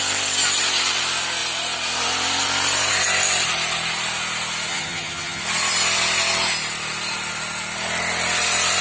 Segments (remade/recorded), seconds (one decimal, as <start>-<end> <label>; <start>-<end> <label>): 0.0-4.7 recorded; 4.7-5.4 remade; 5.4-8.8 recorded